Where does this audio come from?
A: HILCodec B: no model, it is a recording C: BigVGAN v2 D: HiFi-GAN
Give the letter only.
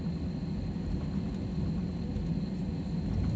B